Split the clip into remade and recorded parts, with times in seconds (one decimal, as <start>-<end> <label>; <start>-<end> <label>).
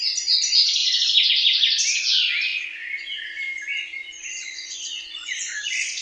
0.0-0.8 recorded; 0.8-1.3 remade; 1.3-4.0 recorded; 4.0-6.0 remade